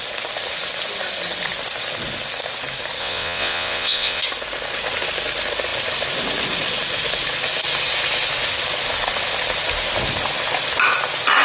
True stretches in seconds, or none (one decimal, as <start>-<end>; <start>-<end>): 0.0-3.0; 4.2-11.4